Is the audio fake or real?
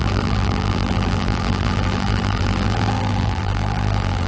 fake